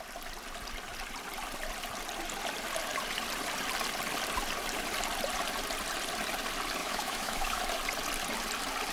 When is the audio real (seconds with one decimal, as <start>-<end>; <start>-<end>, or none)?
0.0-6.8; 7.6-8.9

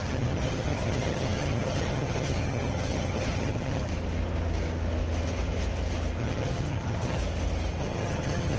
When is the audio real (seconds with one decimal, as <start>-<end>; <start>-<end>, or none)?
3.9-6.2; 7.2-7.8

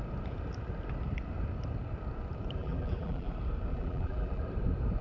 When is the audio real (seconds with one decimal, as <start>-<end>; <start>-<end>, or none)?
0.0-2.6; 3.3-3.7; 4.4-5.0

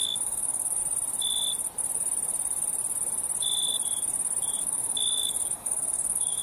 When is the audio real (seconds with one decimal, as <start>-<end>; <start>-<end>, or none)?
0.8-4.6

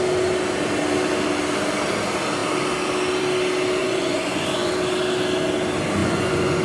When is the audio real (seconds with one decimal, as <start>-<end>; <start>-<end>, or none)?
0.0-3.8; 4.7-6.0